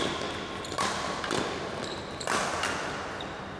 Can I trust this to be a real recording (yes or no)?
yes